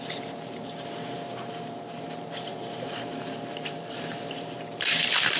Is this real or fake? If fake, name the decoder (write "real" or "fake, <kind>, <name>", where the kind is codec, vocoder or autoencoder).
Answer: fake, vocoder, BigVGAN v2